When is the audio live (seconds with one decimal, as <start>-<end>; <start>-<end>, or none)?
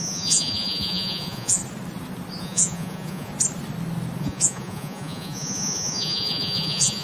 1.6-2.4; 3.3-4.2